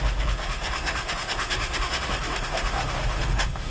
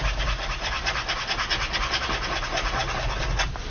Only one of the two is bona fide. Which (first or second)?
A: second